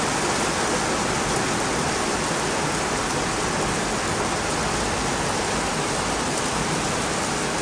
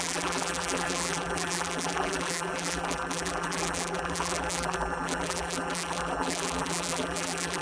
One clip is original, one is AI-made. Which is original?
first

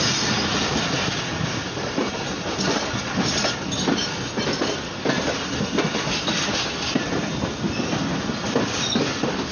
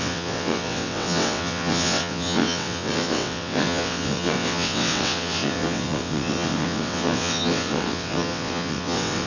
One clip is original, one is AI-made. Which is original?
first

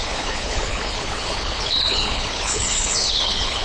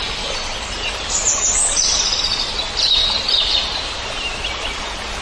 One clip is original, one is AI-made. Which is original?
second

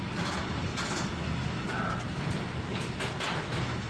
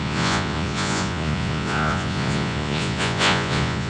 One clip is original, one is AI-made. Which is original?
first